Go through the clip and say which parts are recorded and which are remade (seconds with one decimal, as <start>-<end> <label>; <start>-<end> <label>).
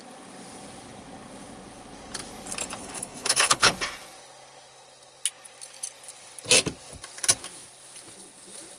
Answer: 0.0-2.8 recorded; 2.8-3.7 remade; 3.7-8.8 recorded